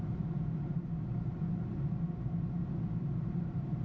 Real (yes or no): yes